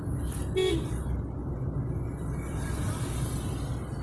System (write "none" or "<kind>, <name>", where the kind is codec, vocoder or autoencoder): none